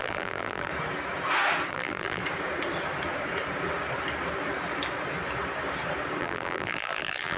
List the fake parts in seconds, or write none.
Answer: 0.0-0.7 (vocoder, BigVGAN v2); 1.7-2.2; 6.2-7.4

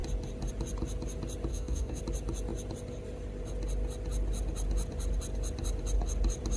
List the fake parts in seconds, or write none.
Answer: 1.5-2.0 (codec, DAC)

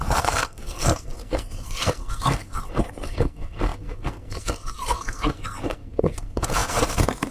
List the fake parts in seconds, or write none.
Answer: 0.0-7.3 (codec, SNAC)

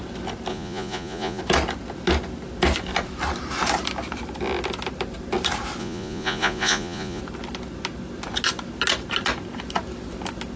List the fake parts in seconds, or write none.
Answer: 0.5-1.4 (vocoder, Vocos); 5.8-7.2

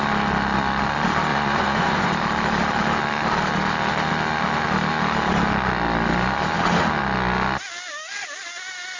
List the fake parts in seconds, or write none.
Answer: 1.3-2.1 (vocoder, Vocos)